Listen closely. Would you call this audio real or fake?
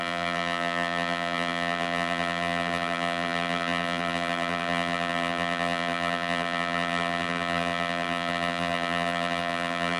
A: fake